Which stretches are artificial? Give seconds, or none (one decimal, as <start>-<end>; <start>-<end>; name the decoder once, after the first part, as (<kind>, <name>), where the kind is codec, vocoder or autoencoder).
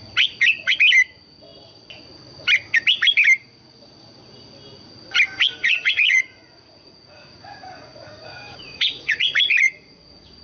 5.6-10.4 (vocoder, Vocos)